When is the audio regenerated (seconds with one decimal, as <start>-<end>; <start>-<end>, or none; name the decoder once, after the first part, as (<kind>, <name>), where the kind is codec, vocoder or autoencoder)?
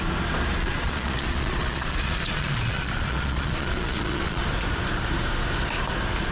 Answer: 0.6-4.4 (vocoder, Vocos)